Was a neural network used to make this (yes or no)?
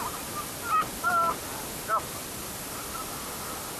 yes